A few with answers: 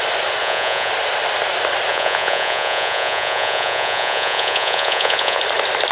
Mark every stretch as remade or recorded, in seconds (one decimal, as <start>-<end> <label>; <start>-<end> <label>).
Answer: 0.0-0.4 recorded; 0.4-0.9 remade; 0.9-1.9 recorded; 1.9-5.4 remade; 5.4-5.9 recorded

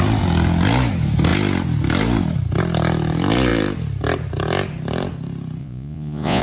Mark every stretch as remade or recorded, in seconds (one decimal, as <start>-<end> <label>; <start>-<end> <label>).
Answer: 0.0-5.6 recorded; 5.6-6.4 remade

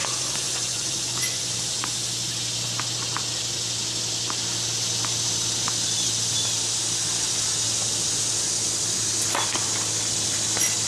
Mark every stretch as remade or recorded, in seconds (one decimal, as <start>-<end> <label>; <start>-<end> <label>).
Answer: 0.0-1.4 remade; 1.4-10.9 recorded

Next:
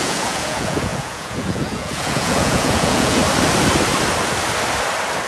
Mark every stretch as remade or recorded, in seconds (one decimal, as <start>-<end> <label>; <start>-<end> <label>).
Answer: 0.0-3.2 remade; 3.2-5.3 recorded

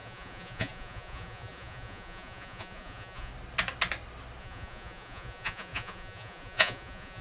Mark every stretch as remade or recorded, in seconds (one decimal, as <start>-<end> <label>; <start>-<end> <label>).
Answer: 0.0-3.3 remade; 3.3-4.4 recorded; 4.4-7.2 remade

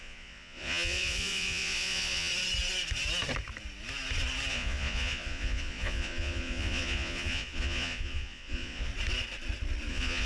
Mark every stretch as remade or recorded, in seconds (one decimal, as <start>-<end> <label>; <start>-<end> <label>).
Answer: 0.0-2.3 remade; 2.3-4.5 recorded; 4.5-8.9 remade; 8.9-9.9 recorded; 9.9-10.3 remade